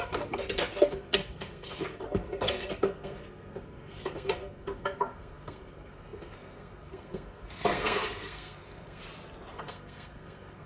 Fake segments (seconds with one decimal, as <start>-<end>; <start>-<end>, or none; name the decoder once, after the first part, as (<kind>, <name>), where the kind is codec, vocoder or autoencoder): 0.0-9.0 (codec, SNAC); 9.5-10.7